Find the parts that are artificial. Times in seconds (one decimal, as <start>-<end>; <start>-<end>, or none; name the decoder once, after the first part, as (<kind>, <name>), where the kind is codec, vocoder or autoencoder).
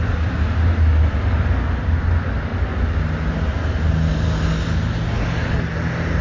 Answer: none